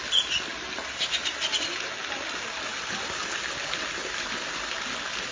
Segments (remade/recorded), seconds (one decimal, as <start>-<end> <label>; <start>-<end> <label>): 0.0-5.3 recorded